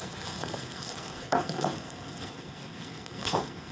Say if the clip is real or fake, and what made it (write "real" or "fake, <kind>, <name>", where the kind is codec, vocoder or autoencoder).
fake, codec, SNAC